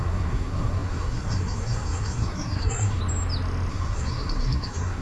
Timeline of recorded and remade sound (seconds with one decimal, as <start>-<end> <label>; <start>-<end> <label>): 0.0-3.0 remade; 3.0-3.7 recorded; 3.7-5.0 remade